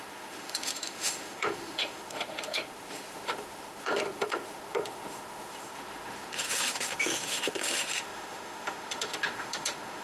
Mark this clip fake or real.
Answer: fake